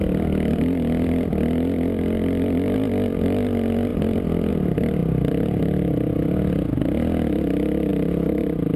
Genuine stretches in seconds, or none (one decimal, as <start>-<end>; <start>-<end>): 0.0-8.8

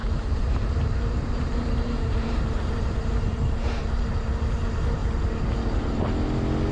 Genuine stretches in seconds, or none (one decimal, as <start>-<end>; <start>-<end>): 4.0-5.0; 5.5-6.7